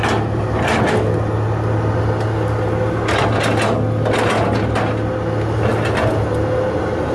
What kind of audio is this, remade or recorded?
recorded